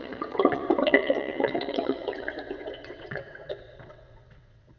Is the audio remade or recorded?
remade